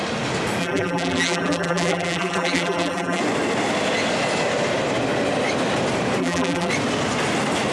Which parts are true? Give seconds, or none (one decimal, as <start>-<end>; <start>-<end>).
0.0-0.6; 3.2-6.2; 6.7-7.7